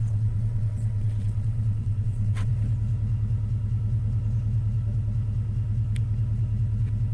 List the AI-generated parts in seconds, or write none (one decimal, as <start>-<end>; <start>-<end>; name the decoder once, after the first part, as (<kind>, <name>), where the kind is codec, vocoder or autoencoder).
0.0-2.5 (vocoder, WaveNeXt)